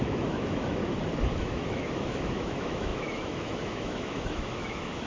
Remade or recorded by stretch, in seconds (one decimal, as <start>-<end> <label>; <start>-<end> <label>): 0.0-0.8 remade; 0.8-1.4 recorded; 1.4-5.1 remade